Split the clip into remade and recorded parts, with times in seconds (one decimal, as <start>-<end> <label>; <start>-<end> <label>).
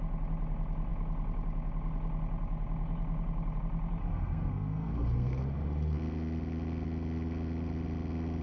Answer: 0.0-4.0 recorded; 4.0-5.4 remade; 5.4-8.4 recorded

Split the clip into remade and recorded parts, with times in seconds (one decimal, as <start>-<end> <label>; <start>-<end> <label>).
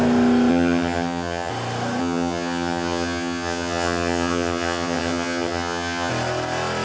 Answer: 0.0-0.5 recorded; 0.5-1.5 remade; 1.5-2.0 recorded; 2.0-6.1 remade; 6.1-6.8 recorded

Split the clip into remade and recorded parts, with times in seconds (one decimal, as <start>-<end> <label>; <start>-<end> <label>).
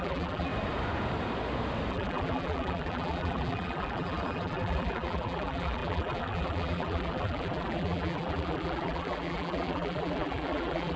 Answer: 0.0-0.5 remade; 0.5-1.9 recorded; 1.9-11.0 remade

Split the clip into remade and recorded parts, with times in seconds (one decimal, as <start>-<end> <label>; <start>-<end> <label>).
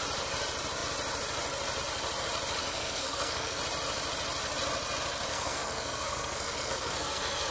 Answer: 0.0-2.6 recorded; 2.6-3.6 remade; 3.6-5.3 recorded; 5.3-7.5 remade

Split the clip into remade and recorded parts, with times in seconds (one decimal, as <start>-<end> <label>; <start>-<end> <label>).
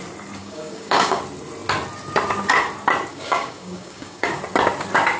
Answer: 0.0-0.4 recorded; 0.4-1.2 remade; 1.2-3.1 recorded; 3.1-4.4 remade; 4.4-5.2 recorded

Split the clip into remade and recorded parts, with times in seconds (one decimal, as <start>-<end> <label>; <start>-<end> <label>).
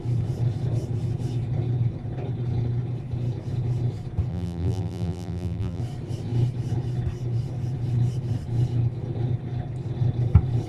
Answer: 0.0-4.3 recorded; 4.3-5.8 remade; 5.8-10.7 recorded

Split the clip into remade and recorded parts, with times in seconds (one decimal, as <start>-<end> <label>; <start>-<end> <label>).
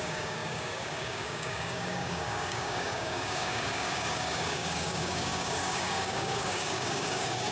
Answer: 0.0-7.5 remade